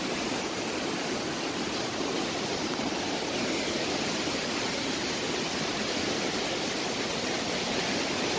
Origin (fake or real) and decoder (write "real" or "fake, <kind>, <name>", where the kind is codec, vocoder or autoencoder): real